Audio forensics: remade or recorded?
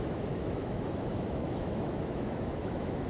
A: remade